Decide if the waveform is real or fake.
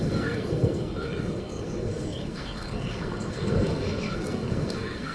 fake